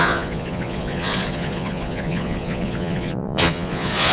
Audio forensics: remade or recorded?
remade